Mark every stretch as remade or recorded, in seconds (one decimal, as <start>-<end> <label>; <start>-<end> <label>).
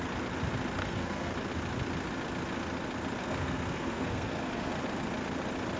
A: 0.0-0.8 recorded; 0.8-1.3 remade; 1.3-3.2 recorded; 3.2-4.7 remade; 4.7-5.8 recorded